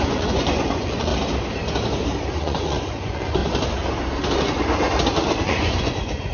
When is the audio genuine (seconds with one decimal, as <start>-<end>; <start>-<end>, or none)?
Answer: 1.1-2.3; 3.4-5.4